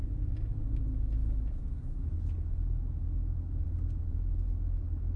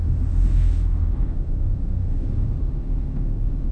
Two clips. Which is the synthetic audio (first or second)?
second